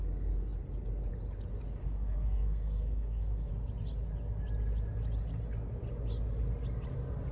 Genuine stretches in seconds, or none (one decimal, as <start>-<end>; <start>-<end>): 0.0-1.8; 3.5-7.3